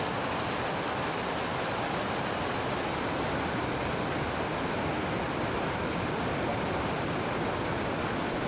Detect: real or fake real